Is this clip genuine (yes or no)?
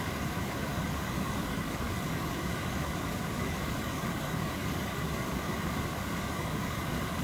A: no